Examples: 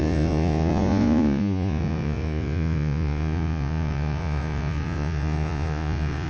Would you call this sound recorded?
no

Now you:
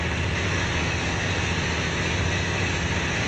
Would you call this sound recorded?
yes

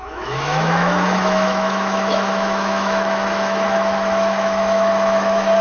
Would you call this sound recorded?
no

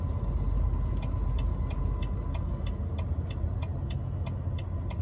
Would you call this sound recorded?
yes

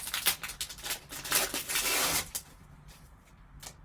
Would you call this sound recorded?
yes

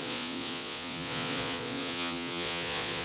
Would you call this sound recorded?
no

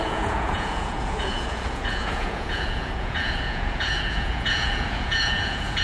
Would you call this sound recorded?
no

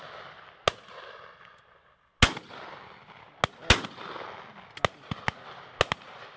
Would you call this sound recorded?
yes